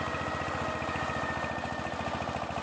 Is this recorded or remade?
recorded